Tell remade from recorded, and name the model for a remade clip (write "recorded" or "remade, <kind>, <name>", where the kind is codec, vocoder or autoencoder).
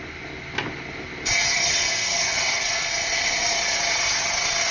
recorded